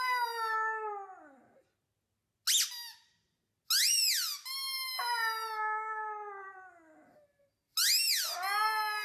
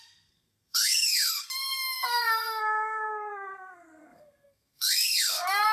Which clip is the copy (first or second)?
second